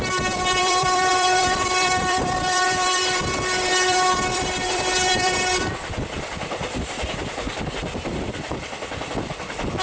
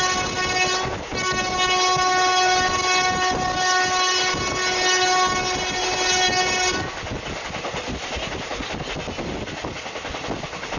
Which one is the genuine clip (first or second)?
second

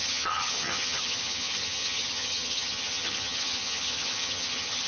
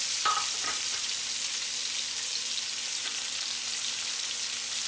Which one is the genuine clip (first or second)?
second